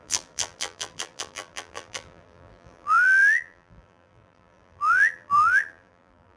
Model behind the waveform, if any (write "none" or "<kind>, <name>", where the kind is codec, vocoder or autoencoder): vocoder, BigVGAN v2